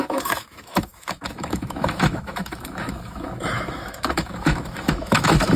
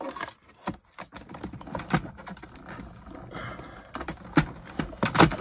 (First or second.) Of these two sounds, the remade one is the first